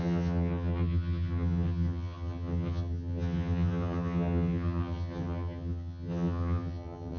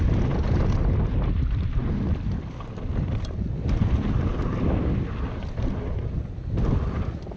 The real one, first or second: second